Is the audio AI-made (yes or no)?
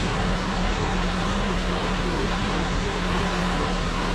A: yes